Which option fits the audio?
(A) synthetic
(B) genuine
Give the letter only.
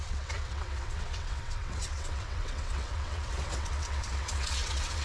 A